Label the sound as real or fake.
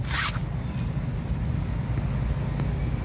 real